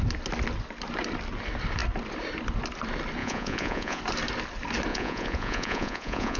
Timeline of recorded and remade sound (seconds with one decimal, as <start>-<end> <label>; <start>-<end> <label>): 0.0-3.2 recorded; 3.2-4.0 remade; 4.0-4.9 recorded; 4.9-6.4 remade